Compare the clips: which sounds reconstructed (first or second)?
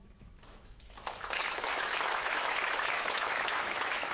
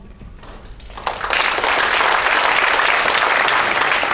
first